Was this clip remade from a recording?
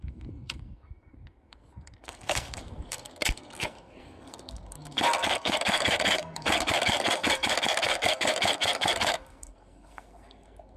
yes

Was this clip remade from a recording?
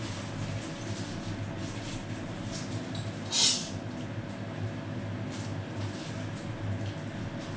no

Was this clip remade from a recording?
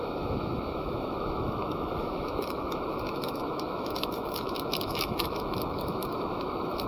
yes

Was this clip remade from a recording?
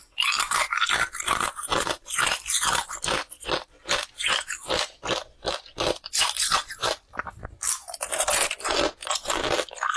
no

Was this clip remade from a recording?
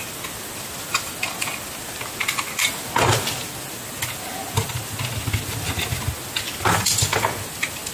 no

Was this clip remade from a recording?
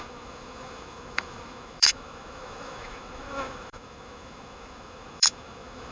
yes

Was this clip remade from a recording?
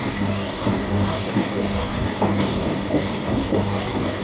yes